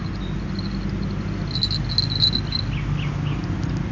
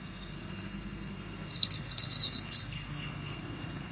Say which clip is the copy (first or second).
second